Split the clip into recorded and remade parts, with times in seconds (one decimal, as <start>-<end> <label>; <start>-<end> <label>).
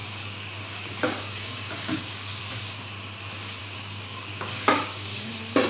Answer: 0.0-2.4 remade; 2.4-3.6 recorded; 3.6-5.3 remade; 5.3-5.7 recorded